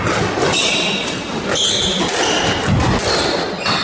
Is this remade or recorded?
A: recorded